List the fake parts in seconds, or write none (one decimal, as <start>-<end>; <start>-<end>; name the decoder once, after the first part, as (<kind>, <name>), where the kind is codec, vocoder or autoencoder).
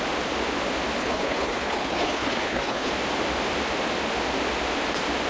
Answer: 1.0-2.9 (codec, HILCodec)